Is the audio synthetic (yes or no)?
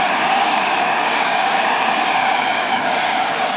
yes